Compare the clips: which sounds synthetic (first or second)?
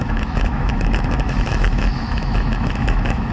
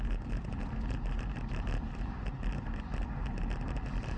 first